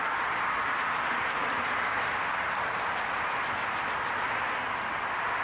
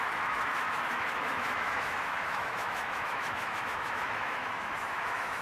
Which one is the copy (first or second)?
second